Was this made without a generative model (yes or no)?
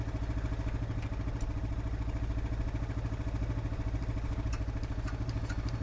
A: yes